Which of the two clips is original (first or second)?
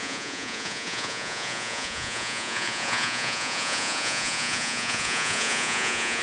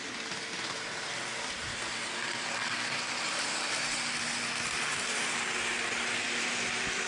second